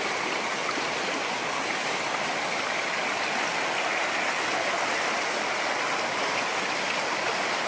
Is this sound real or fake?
real